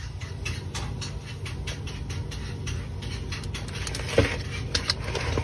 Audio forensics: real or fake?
real